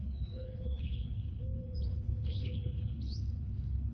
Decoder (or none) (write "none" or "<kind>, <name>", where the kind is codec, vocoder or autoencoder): codec, HILCodec